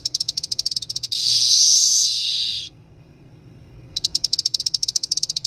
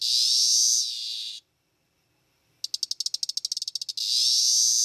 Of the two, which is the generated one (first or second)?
first